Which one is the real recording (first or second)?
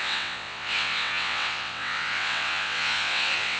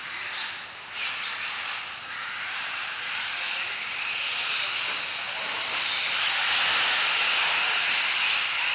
second